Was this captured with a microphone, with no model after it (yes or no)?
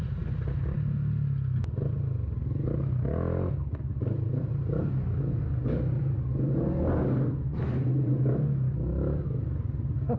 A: yes